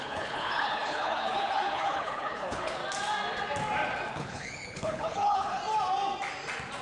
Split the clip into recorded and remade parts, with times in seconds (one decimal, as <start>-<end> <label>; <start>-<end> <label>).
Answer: 0.0-2.8 remade; 2.8-4.1 recorded; 4.1-5.6 remade; 5.6-6.8 recorded